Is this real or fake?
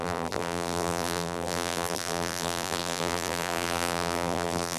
fake